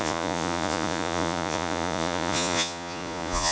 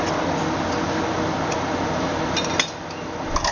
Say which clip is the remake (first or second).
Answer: first